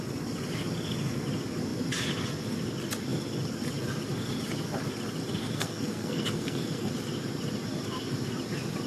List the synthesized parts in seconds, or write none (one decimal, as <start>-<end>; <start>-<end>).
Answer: 5.4-6.9